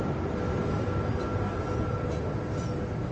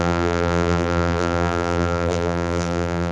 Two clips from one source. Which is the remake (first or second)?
second